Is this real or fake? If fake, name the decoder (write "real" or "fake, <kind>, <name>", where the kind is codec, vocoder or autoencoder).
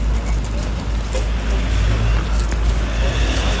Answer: real